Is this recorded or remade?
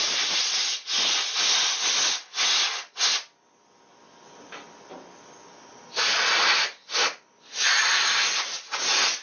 recorded